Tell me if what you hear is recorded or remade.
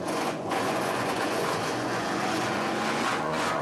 remade